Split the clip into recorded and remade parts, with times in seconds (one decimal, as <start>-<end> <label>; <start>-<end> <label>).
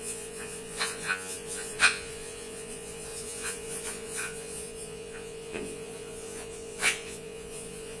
0.0-8.0 remade